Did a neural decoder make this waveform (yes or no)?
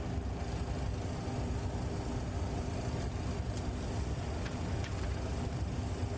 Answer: no